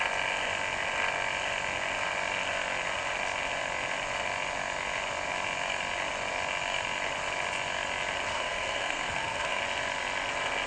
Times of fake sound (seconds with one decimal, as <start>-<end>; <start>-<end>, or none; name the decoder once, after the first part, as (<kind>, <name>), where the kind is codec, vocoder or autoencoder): 8.3-9.6 (codec, SNAC)